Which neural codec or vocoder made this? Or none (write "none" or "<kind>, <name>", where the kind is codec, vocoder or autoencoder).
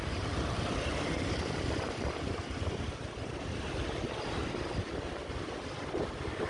none